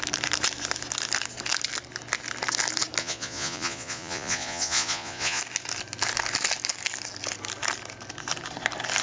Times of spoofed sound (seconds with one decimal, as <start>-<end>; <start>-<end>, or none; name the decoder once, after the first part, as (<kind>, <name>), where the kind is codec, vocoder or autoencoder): 3.0-5.4 (vocoder, Vocos)